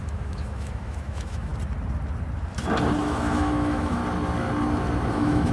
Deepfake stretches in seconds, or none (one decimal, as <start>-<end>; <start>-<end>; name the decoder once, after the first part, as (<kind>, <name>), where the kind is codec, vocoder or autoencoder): 0.0-1.5 (autoencoder, DAC-VAE); 3.0-4.0; 5.1-5.5

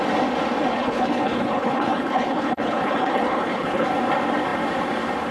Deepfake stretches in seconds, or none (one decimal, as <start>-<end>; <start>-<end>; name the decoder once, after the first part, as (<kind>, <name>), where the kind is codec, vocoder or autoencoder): 0.7-3.9 (codec, HILCodec)

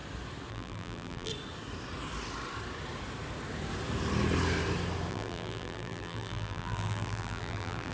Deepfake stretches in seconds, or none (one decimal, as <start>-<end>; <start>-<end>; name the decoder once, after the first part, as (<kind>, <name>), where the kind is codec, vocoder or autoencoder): 0.5-1.3 (vocoder, BigVGAN v2); 5.1-7.9

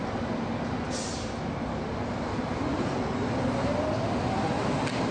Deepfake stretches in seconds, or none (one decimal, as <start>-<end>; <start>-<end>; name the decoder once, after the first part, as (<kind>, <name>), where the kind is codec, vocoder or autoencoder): 2.5-3.9 (vocoder, BigVGAN v2)

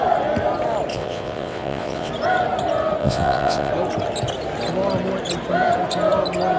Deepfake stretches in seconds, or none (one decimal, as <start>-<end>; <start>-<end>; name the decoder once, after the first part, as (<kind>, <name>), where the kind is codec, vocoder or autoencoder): 0.9-2.1 (vocoder, WaveNeXt); 3.0-3.7

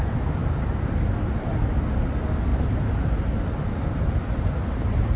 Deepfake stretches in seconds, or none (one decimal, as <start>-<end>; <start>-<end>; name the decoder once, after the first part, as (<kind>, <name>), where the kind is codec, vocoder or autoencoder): none

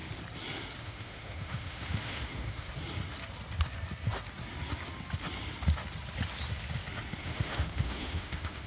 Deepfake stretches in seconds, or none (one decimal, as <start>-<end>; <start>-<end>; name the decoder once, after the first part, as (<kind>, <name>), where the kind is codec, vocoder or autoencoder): 0.8-2.7 (autoencoder, DAC-VAE); 7.2-8.7

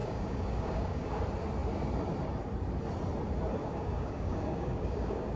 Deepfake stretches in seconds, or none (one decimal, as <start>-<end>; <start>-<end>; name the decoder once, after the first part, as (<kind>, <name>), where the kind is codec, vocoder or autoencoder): 0.0-1.2 (codec, DAC); 3.6-5.4